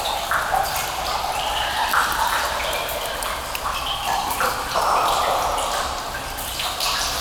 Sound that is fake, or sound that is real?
real